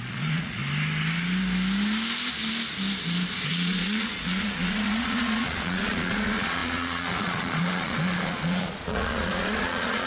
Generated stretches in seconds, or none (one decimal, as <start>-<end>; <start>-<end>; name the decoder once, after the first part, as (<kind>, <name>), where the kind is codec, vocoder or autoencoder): 0.0-0.6 (vocoder, Vocos); 3.5-10.1